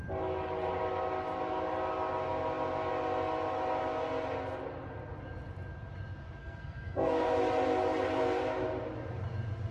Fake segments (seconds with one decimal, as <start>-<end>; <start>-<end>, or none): 6.4-7.3